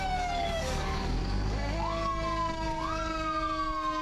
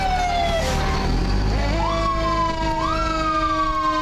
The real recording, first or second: second